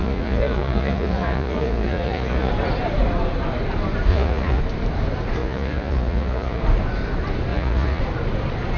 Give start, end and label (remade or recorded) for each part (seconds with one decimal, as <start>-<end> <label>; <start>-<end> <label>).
0.0-2.5 remade; 2.5-4.1 recorded; 4.1-4.6 remade; 4.6-5.4 recorded; 5.4-6.6 remade; 6.6-7.5 recorded; 7.5-8.0 remade; 8.0-8.8 recorded